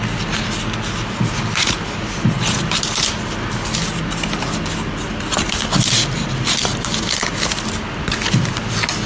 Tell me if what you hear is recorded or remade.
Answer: recorded